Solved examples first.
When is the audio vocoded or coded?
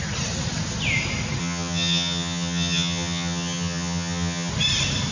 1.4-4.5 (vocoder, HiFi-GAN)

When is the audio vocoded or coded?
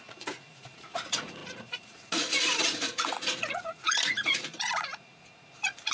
0.0-5.9 (vocoder, Vocos)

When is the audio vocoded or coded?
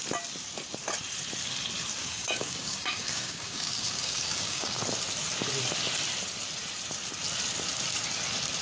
2.0-4.8 (codec, DAC)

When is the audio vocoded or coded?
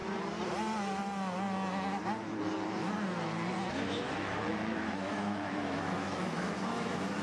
3.7-7.2 (autoencoder, DAC-VAE)